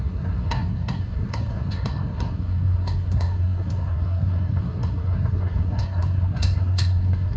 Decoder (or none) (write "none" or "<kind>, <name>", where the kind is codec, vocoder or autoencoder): codec, SNAC